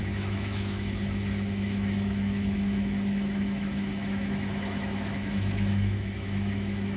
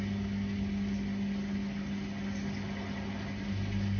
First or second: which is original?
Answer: second